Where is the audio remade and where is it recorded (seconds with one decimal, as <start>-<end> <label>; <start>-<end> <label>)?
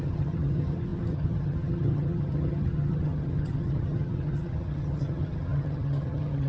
0.0-6.5 remade